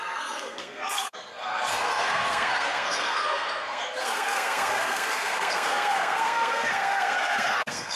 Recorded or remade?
remade